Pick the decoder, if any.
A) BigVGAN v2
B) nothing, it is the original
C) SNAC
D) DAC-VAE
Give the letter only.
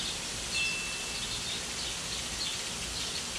B